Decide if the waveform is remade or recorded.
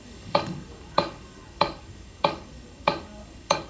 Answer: remade